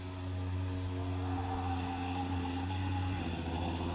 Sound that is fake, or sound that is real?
real